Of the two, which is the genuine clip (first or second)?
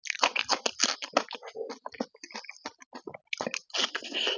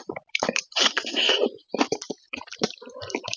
first